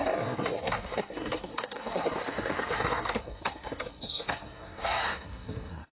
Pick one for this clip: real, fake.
fake